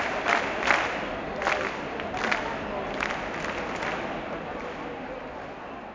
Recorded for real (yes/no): yes